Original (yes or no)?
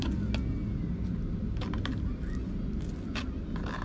yes